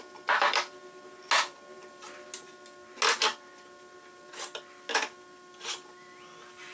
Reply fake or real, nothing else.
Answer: real